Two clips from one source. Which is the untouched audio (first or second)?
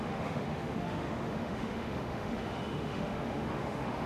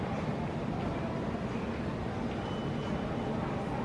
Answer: second